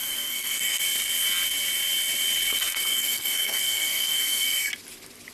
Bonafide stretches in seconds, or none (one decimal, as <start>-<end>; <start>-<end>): 0.8-2.6; 4.7-5.3